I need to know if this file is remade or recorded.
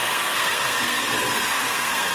remade